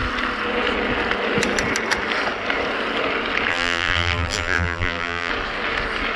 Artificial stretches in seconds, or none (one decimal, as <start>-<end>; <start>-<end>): 3.5-5.3